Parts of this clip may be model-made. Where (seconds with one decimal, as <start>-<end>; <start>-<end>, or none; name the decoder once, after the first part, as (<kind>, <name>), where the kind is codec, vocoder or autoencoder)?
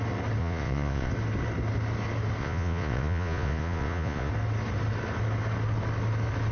0.4-1.1 (vocoder, Vocos); 2.4-4.3